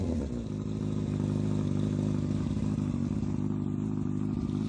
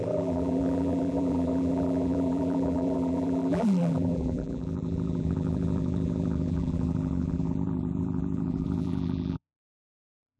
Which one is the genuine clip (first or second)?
first